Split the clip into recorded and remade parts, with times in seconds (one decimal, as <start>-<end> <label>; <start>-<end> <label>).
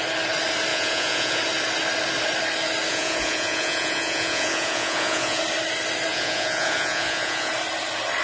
0.0-0.7 recorded; 0.7-1.4 remade; 1.4-2.9 recorded; 2.9-5.4 remade; 5.4-6.1 recorded; 6.1-7.5 remade; 7.5-8.2 recorded